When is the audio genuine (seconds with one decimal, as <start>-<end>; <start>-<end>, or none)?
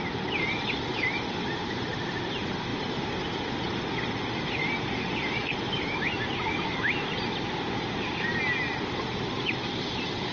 0.0-10.3